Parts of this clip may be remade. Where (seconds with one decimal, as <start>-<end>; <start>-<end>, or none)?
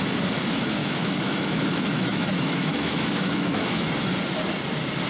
0.8-3.9